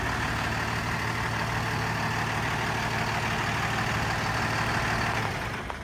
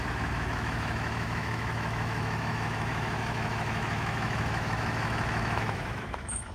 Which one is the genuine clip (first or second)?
first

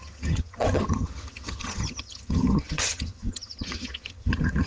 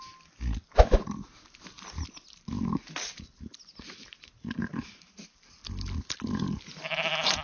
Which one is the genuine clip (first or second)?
second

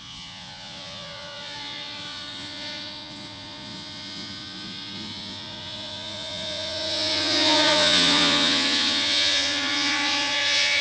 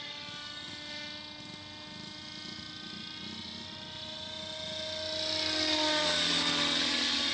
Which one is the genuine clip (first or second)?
second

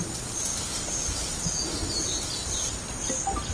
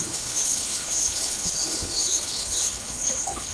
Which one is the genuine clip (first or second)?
first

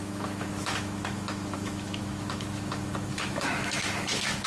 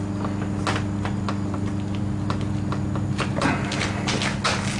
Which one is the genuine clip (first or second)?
second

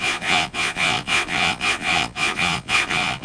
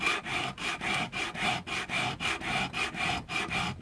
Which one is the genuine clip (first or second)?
second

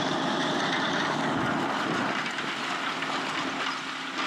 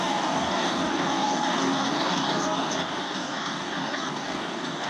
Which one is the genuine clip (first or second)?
first